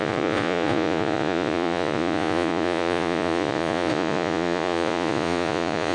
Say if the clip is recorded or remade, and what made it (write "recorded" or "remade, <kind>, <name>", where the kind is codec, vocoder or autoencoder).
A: remade, vocoder, Vocos